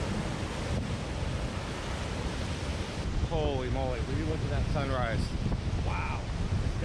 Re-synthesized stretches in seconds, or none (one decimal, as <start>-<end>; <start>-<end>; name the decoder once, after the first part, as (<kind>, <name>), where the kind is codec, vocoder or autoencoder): none